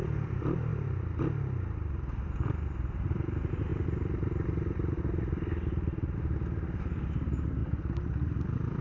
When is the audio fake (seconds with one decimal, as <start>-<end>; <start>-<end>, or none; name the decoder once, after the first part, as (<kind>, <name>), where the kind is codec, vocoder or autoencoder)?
0.0-0.7 (vocoder, BigVGAN v2); 2.3-3.7; 5.0-8.8